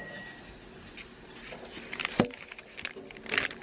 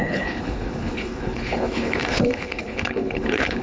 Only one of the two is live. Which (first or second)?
first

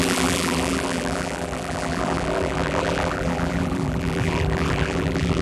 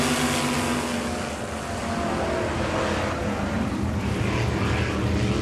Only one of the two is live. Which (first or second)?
second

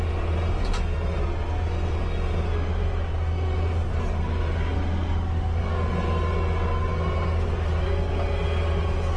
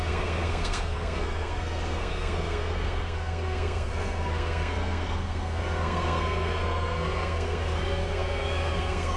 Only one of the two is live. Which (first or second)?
first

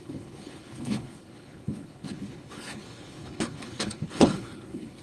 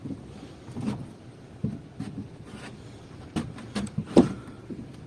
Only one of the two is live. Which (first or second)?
second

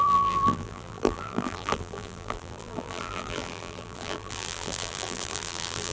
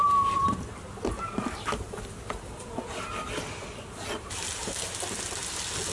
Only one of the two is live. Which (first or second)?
second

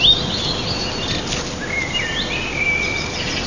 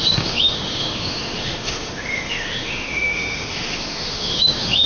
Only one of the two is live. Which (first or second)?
first